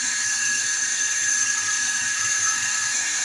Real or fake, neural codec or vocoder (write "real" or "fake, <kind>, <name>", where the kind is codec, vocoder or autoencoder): fake, codec, SNAC